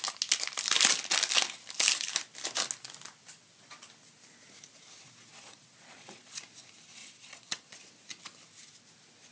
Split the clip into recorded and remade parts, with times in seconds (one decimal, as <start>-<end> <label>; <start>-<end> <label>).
0.0-5.3 recorded; 5.3-6.4 remade; 6.4-7.0 recorded; 7.0-8.2 remade; 8.2-9.3 recorded

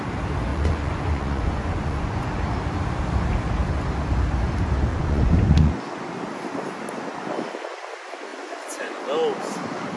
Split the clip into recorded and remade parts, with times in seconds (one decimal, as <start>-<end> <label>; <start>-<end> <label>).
0.0-0.5 recorded; 0.5-2.3 remade; 2.3-4.9 recorded; 4.9-5.8 remade; 5.8-8.3 recorded; 8.3-8.9 remade; 8.9-10.0 recorded

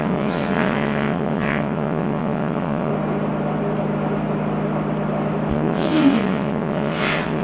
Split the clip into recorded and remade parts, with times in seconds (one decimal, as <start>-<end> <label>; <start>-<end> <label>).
0.0-2.9 remade; 2.9-5.5 recorded; 5.5-7.4 remade

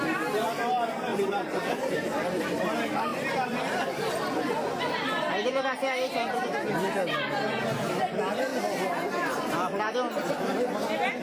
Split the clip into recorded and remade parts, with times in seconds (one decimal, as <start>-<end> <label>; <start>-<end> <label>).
0.0-1.1 recorded; 1.1-1.9 remade; 1.9-3.1 recorded; 3.1-4.1 remade; 4.1-11.2 recorded

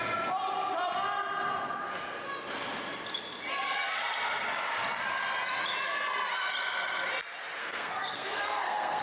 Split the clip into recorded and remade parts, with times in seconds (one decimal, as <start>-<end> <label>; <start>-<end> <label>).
0.0-7.6 recorded; 7.6-9.0 remade

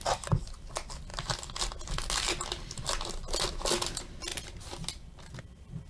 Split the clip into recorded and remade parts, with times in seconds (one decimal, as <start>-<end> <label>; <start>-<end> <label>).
0.0-5.9 recorded